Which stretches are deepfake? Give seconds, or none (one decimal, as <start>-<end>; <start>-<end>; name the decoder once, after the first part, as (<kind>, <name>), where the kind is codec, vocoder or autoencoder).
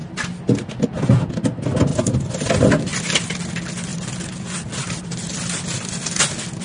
1.9-3.2 (vocoder, BigVGAN v2); 3.9-5.6